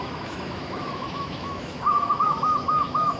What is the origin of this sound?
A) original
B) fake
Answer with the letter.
B